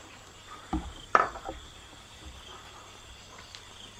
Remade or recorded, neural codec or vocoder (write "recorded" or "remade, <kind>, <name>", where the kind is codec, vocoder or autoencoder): remade, vocoder, BigVGAN v2